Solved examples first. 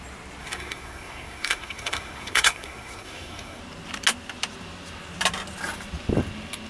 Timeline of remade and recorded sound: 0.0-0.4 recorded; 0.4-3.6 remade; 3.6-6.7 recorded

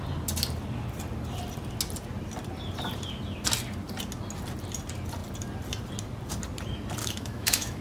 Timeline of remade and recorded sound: 0.0-7.0 recorded; 7.0-7.8 remade

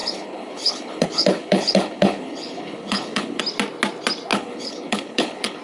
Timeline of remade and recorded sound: 0.0-3.4 remade; 3.4-4.3 recorded; 4.3-5.6 remade

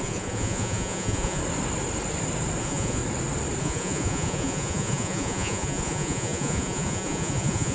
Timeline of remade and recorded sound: 0.0-1.4 remade; 1.4-2.6 recorded; 2.6-3.0 remade; 3.0-3.6 recorded; 3.6-7.7 remade

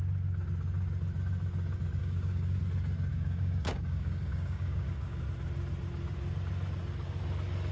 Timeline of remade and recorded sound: 0.0-2.0 recorded; 2.0-2.6 remade; 2.6-3.1 recorded; 3.1-5.2 remade; 5.2-7.7 recorded

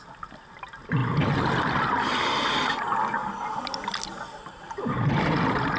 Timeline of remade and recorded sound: 0.0-5.8 recorded

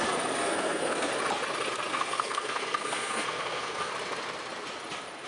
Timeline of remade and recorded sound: 0.0-0.4 recorded; 0.4-1.1 remade; 1.1-1.9 recorded; 1.9-3.9 remade; 3.9-5.3 recorded

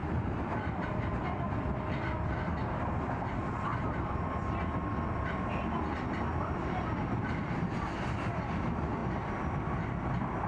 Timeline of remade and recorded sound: 0.0-1.1 remade; 1.1-10.5 recorded